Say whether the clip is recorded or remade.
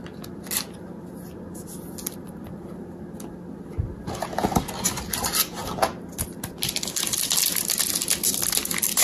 recorded